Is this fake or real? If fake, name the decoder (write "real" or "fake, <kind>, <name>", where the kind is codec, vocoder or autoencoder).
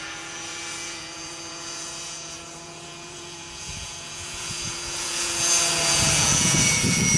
fake, vocoder, Vocos